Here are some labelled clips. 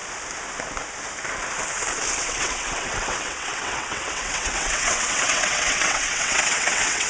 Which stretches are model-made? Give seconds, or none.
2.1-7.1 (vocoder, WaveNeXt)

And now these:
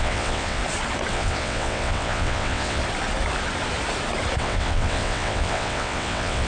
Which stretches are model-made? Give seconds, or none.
0.0-0.6 (vocoder, WaveNeXt); 1.1-2.8; 4.4-6.5